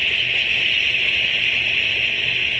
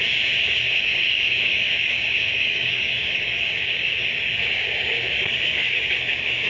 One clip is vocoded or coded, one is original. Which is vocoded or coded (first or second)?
second